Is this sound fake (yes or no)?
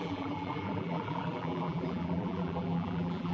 yes